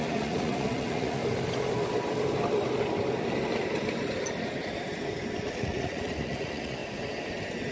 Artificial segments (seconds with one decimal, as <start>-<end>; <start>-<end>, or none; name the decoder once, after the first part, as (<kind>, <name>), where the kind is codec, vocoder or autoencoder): 0.0-1.2 (vocoder, Vocos); 5.5-6.8